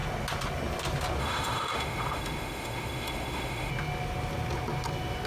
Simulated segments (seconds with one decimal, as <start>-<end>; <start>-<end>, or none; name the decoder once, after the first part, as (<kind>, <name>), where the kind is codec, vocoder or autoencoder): 1.2-3.7 (autoencoder, DAC-VAE)